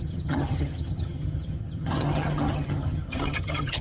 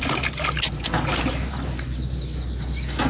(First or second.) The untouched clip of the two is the second